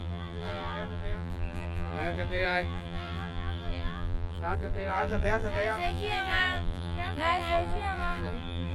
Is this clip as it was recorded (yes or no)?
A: no